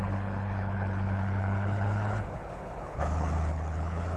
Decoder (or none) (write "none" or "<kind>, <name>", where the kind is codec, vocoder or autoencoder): codec, HILCodec